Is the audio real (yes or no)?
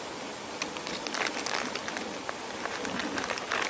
yes